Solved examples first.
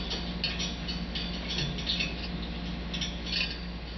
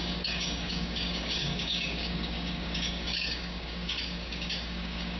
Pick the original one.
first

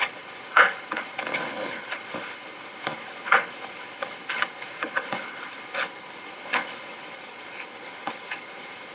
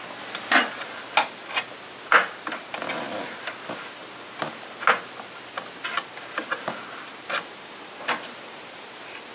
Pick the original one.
second